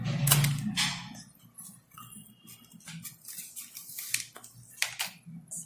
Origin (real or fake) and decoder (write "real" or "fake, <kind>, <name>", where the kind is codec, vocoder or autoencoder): real